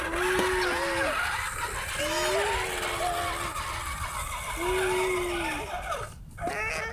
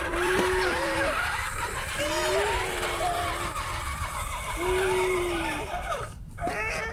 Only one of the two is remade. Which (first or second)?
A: second